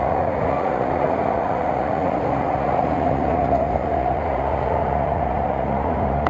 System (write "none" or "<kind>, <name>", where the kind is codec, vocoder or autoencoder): vocoder, Vocos